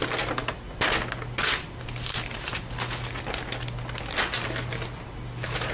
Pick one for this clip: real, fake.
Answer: real